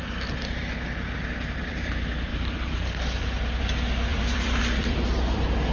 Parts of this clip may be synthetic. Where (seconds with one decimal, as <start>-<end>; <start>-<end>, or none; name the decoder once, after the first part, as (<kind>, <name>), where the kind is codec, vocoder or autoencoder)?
0.0-0.6 (vocoder, BigVGAN v2); 1.6-5.7